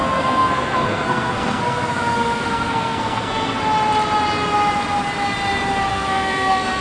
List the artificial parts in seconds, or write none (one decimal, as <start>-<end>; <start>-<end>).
0.0-3.6; 5.9-6.8